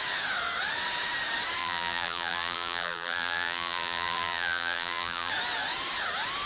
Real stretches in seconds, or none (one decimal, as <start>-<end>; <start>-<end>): 0.0-1.6; 5.3-6.5